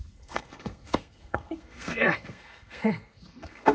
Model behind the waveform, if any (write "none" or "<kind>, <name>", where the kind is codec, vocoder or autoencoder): codec, SNAC